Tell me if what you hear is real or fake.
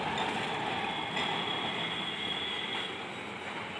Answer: real